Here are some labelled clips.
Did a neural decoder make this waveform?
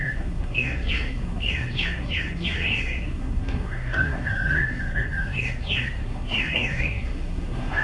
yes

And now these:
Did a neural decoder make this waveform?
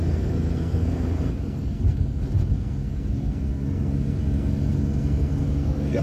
yes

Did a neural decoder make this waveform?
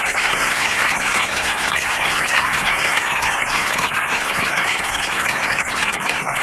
yes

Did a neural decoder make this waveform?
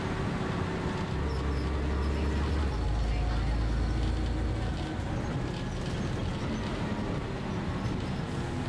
no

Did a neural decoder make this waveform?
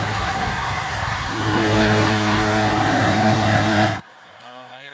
yes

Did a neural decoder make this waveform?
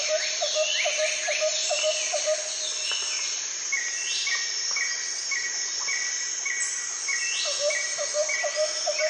no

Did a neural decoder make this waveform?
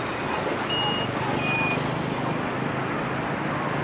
no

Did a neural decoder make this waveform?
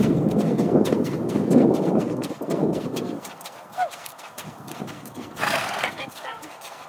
yes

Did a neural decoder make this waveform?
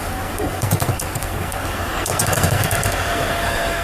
yes